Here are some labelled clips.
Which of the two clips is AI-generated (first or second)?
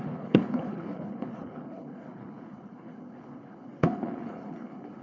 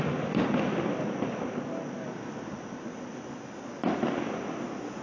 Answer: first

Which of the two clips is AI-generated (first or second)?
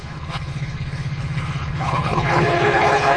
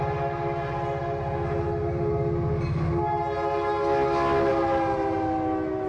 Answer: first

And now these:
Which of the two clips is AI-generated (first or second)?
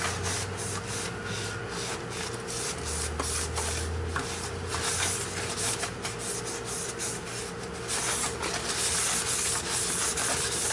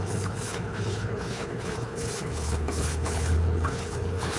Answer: second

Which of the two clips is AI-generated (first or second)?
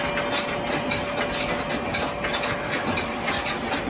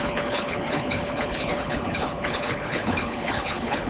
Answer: second